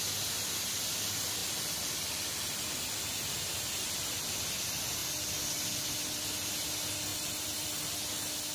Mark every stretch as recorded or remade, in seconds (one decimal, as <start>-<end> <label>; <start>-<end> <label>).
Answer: 0.0-1.4 recorded; 1.4-4.4 remade; 4.4-5.0 recorded; 5.0-6.0 remade; 6.0-7.1 recorded; 7.1-7.7 remade; 7.7-8.5 recorded